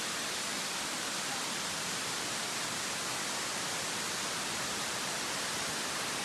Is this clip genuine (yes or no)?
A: yes